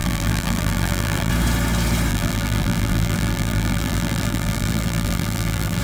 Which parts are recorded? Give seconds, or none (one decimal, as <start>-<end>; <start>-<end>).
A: 1.3-2.1